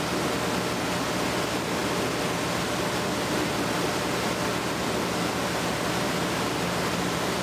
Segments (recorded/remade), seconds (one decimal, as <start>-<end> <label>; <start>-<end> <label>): 0.0-7.4 recorded